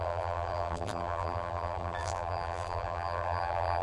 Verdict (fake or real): fake